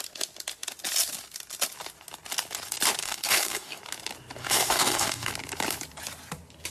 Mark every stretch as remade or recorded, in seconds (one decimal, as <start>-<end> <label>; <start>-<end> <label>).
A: 0.0-3.0 recorded; 3.0-3.8 remade; 3.8-4.4 recorded; 4.4-5.3 remade; 5.3-6.7 recorded

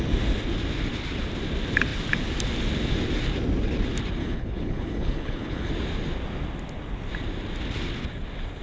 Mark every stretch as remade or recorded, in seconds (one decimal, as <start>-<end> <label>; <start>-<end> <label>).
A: 0.0-4.2 recorded; 4.2-5.7 remade; 5.7-8.6 recorded

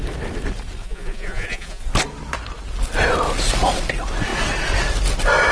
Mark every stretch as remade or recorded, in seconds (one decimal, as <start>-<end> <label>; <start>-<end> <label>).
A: 0.0-0.8 recorded; 0.8-1.8 remade; 1.8-5.5 recorded

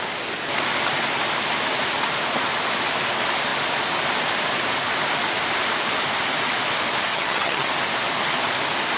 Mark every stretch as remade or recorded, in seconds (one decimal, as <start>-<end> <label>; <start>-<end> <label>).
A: 0.0-7.1 recorded; 7.1-7.7 remade; 7.7-9.0 recorded